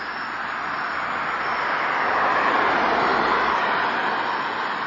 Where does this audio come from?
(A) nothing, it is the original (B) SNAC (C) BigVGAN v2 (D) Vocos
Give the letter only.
A